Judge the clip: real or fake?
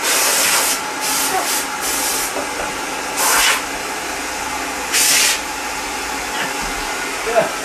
real